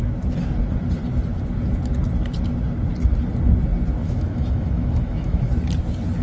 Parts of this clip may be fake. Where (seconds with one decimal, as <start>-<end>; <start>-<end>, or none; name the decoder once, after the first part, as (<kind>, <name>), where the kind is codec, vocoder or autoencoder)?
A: 4.0-5.5 (autoencoder, DAC-VAE)